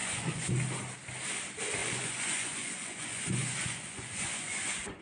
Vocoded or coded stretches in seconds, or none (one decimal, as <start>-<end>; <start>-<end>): 0.0-0.5; 1.8-5.0